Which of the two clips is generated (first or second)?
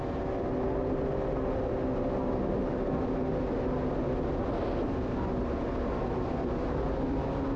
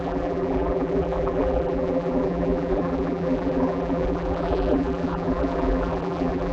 second